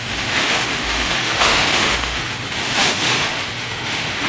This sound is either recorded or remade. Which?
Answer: remade